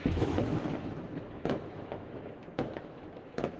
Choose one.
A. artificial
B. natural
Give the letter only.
A